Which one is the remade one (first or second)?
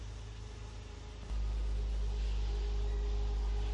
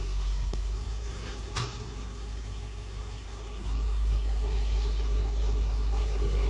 second